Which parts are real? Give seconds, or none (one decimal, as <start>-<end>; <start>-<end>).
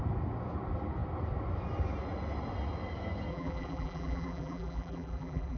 0.0-3.3